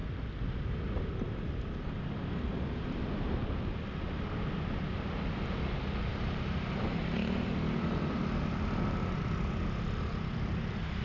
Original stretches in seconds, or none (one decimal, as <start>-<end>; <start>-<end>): 0.0-6.1; 6.8-11.0